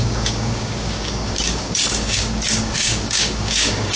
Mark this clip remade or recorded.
remade